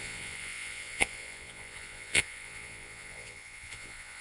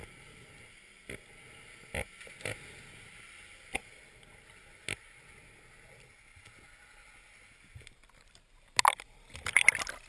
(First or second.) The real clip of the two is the second